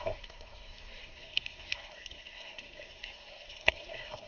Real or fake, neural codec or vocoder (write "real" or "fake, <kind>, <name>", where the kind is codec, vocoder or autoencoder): fake, codec, SNAC